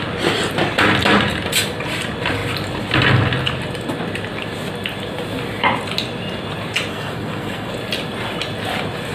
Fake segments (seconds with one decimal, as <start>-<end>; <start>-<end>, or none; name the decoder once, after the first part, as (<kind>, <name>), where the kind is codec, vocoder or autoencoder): 6.9-7.7 (codec, SNAC)